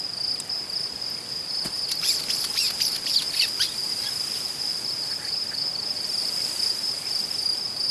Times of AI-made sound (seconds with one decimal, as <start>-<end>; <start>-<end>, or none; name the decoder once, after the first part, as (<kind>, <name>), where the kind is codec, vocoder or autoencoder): none

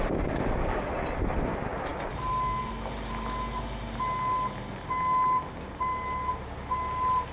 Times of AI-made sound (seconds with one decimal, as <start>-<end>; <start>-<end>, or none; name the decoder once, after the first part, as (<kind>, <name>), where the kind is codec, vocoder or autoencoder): none

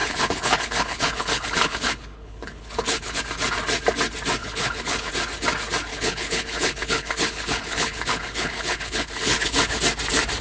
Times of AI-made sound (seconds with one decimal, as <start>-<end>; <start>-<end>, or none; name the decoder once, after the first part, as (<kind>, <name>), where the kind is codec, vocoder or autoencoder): 0.0-3.2 (codec, HILCodec); 4.4-5.1; 5.9-9.8

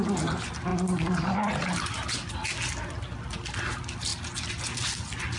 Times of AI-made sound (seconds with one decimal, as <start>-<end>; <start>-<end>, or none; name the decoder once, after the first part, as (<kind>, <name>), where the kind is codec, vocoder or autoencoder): none